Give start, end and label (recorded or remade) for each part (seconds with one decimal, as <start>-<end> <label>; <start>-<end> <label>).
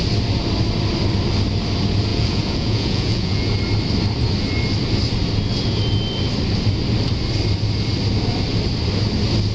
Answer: 0.0-2.1 recorded; 2.1-3.5 remade; 3.5-9.5 recorded